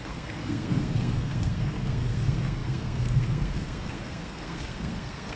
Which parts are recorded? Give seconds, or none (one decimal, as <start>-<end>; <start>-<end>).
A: none